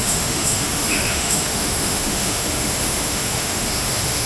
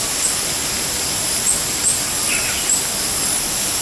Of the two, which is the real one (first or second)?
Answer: second